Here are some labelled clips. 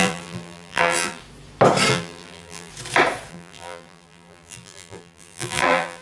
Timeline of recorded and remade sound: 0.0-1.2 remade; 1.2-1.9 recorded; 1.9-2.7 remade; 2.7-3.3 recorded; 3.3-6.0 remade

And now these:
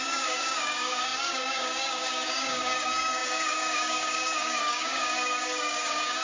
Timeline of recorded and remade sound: 0.0-6.2 remade

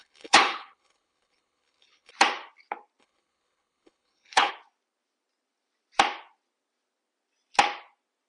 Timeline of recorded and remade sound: 0.0-2.1 remade; 2.1-3.0 recorded; 3.0-4.5 remade; 4.5-8.3 recorded

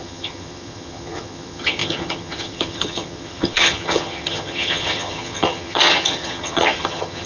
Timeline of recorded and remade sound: 0.0-7.3 remade

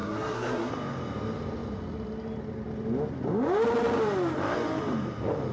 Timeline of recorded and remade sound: 0.0-0.7 remade; 0.7-5.5 recorded

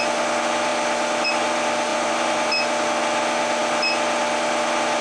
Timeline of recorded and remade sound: 0.0-1.9 recorded; 1.9-2.5 remade; 2.5-5.0 recorded